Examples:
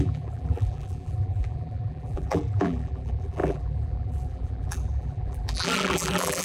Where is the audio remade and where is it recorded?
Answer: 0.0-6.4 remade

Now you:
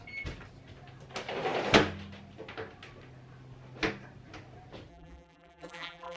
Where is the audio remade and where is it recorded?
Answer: 0.0-4.9 recorded; 4.9-6.2 remade

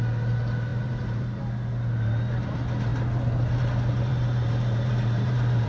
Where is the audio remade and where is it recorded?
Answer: 0.0-0.7 recorded; 0.7-1.4 remade; 1.4-4.1 recorded; 4.1-5.7 remade